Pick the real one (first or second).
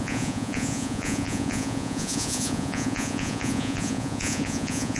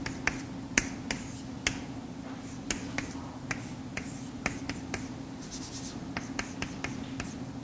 second